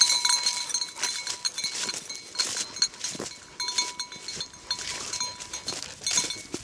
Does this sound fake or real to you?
real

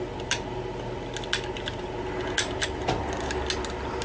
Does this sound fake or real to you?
real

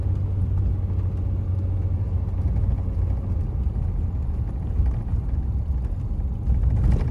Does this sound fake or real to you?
real